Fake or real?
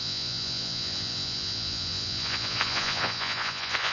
fake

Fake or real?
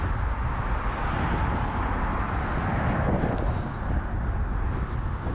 real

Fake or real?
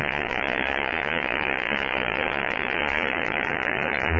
fake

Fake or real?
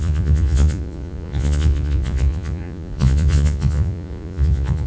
fake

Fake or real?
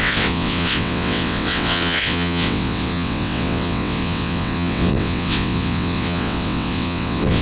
fake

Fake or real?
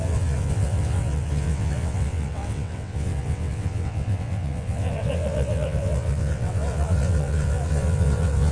fake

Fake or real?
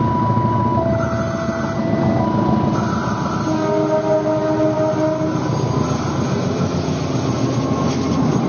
real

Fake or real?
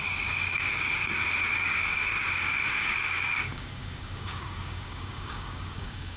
fake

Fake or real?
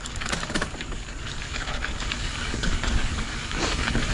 fake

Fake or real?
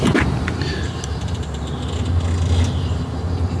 real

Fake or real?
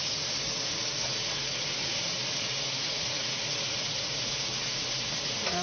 fake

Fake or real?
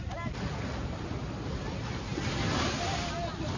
real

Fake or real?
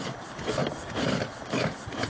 real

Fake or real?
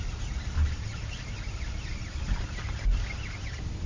real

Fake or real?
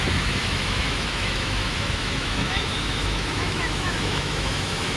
fake